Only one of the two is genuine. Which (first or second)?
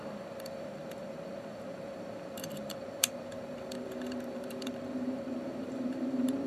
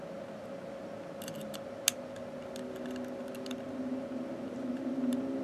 second